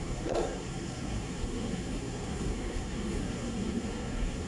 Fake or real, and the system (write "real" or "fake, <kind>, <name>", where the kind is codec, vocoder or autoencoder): fake, codec, SNAC